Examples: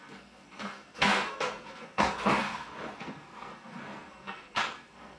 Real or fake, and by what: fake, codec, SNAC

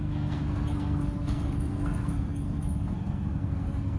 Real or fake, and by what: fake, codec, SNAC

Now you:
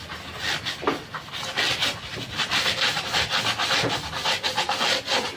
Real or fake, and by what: real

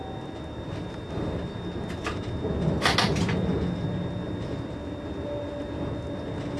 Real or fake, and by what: real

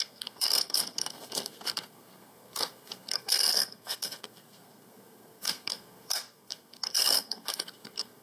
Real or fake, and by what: fake, codec, SNAC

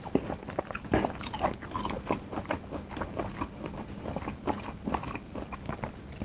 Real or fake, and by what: real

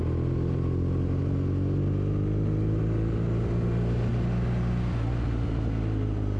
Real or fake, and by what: real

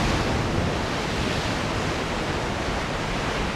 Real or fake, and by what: real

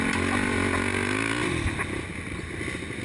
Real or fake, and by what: real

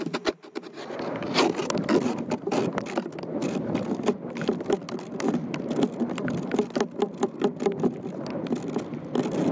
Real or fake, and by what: real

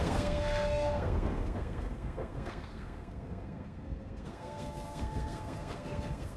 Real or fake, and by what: fake, codec, SNAC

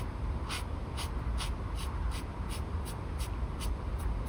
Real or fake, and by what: real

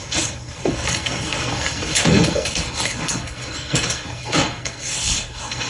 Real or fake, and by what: fake, codec, SNAC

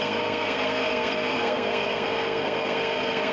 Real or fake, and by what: fake, codec, SNAC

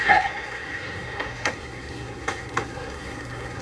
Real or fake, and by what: fake, codec, SNAC